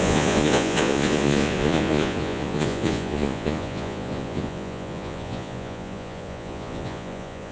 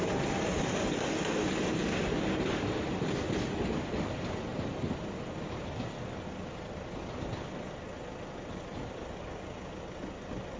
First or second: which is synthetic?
first